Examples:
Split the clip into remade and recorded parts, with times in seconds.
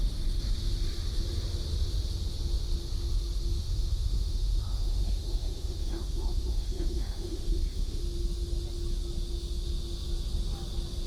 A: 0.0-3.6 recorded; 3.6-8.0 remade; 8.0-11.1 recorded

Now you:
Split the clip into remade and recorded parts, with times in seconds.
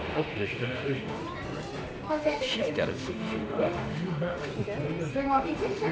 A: 0.0-1.2 remade; 1.2-2.1 recorded; 2.1-4.5 remade; 4.5-5.1 recorded; 5.1-5.9 remade